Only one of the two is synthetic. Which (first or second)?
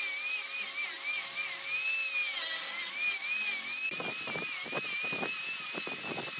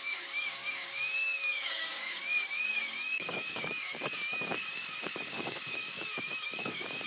second